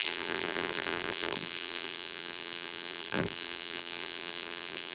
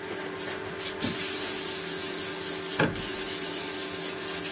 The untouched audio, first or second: second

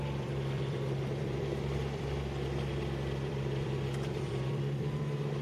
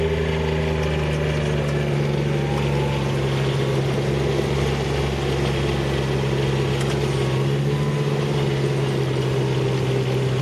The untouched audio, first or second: second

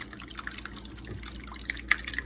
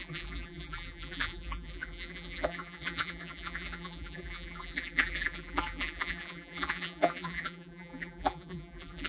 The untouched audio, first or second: first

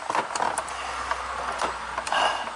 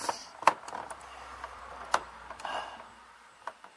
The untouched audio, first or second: first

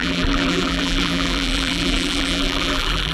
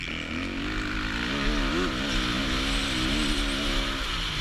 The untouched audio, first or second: second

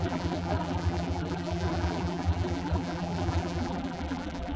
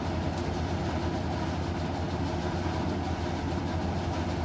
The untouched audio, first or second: second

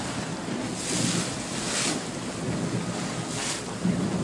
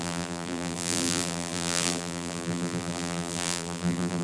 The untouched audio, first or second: first